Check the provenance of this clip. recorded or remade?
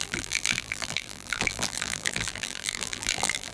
remade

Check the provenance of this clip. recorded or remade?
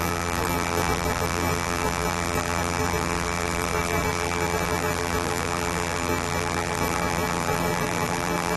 remade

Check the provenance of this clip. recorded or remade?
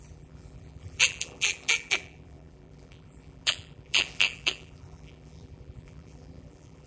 remade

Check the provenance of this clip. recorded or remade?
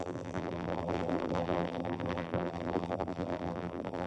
remade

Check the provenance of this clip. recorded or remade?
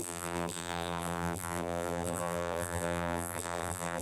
remade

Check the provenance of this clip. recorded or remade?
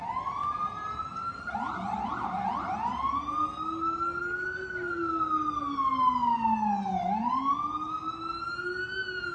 recorded